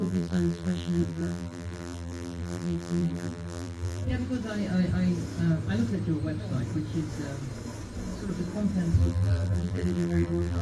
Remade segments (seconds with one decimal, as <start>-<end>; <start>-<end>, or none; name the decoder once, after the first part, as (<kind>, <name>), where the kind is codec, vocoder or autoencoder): 0.0-4.1 (vocoder, BigVGAN v2); 9.0-10.6